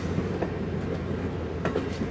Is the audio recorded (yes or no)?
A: yes